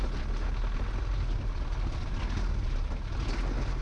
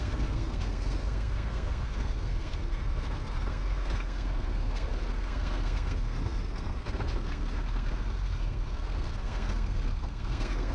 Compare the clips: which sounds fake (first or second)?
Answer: second